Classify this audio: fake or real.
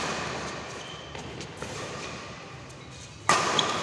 real